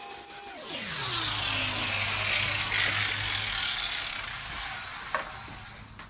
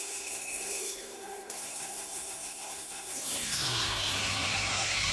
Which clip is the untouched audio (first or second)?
first